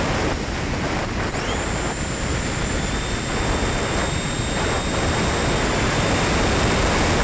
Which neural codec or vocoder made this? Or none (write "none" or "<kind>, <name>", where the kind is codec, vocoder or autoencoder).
none